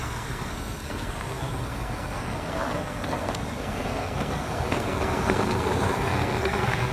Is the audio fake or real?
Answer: fake